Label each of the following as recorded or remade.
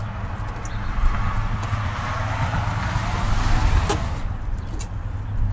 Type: recorded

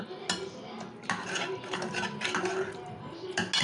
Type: recorded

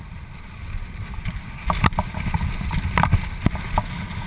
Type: recorded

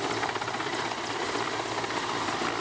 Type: recorded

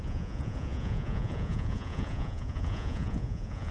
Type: remade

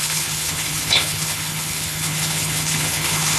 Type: remade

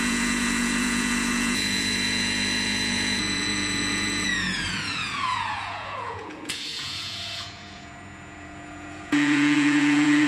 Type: remade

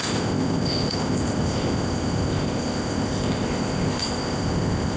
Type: remade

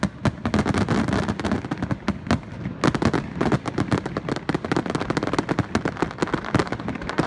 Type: recorded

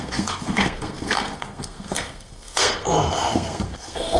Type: remade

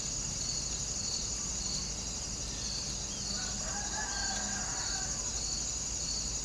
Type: recorded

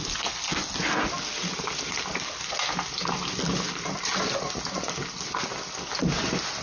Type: recorded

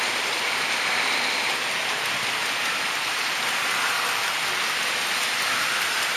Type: recorded